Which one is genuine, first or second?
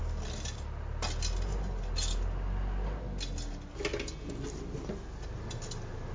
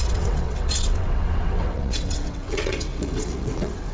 first